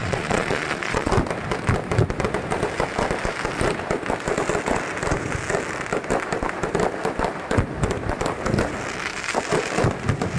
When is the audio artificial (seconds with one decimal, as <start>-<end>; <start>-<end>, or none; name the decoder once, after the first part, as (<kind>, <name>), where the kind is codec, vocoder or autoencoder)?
0.0-1.1 (vocoder, Vocos)